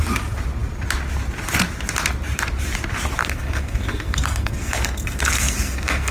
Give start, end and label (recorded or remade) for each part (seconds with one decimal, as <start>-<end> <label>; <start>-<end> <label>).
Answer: 0.0-3.2 recorded; 3.2-6.1 remade